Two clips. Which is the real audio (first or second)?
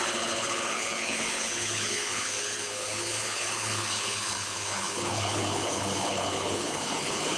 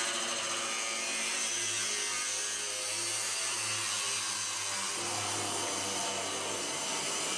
second